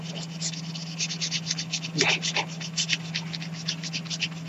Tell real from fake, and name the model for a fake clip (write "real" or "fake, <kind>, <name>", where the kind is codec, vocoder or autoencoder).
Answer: real